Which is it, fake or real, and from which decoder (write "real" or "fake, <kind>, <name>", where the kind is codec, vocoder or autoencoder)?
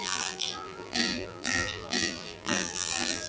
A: fake, vocoder, BigVGAN v2